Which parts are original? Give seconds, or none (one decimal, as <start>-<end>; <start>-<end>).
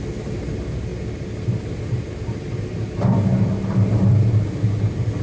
0.0-5.2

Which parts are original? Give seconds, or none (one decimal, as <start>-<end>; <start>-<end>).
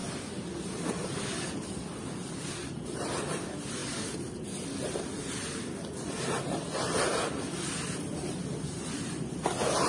0.0-9.9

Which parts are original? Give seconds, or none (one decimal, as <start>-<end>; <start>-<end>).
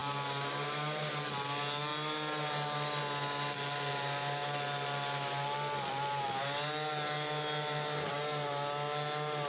1.1-9.5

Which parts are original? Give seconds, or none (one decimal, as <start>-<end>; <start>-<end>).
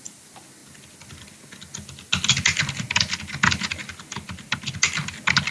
0.0-5.5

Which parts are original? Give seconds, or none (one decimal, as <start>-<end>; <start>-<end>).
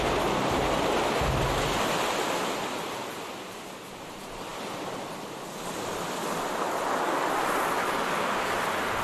0.0-7.8; 8.6-9.0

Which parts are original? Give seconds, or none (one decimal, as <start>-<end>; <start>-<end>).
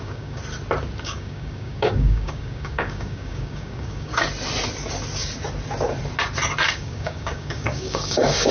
0.4-1.0; 4.1-6.7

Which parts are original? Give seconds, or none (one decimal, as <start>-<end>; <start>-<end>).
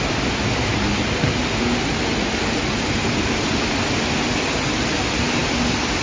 0.0-6.0